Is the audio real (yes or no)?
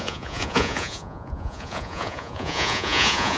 no